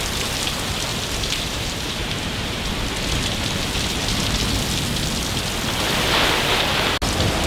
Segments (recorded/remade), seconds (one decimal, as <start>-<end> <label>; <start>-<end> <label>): 0.0-0.9 recorded; 0.9-2.7 remade; 2.7-7.5 recorded